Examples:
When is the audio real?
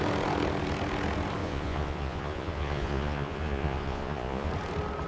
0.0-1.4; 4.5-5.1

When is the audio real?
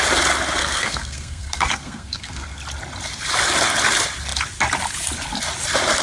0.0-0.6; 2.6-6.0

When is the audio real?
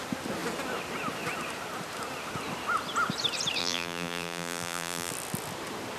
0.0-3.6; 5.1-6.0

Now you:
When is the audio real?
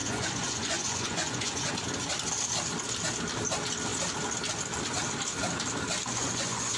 1.7-6.1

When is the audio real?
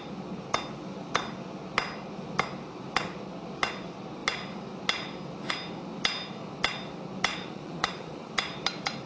0.0-7.3; 8.3-9.1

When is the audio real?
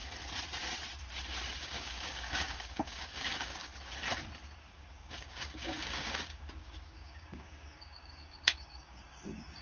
0.0-1.6; 3.7-4.7